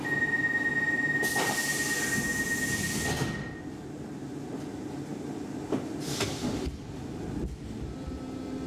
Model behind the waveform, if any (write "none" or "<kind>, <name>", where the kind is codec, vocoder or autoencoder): none